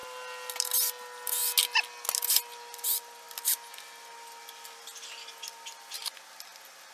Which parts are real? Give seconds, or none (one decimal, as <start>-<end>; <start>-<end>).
0.0-6.9